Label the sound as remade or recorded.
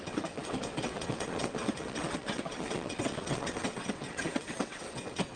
remade